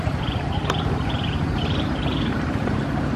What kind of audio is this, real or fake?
fake